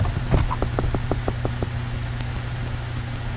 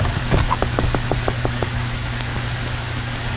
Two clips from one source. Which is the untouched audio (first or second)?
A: first